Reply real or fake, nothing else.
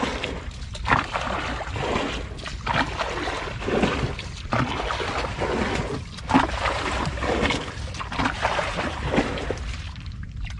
real